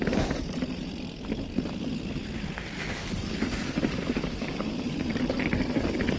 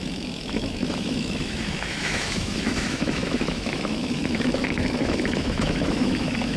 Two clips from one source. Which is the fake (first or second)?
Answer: second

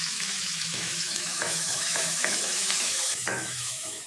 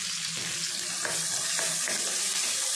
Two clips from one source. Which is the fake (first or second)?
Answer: first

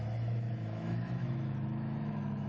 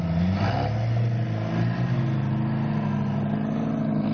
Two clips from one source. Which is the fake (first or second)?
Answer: first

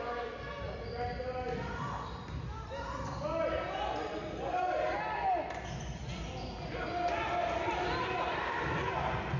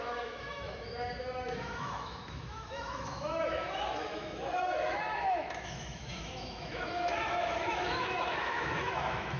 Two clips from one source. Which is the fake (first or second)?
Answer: second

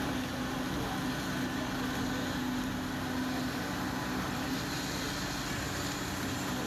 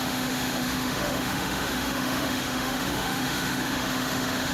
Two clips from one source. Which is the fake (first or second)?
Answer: second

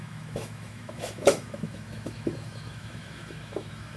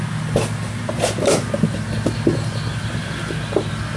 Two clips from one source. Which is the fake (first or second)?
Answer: first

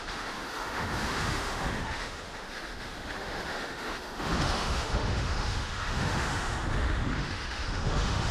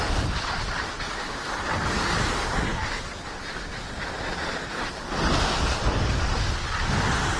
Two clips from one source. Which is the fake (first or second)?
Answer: first